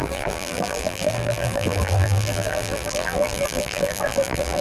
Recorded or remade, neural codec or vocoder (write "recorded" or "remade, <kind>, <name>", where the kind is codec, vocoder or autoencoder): remade, vocoder, BigVGAN v2